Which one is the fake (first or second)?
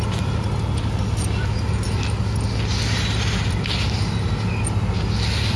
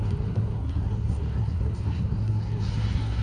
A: second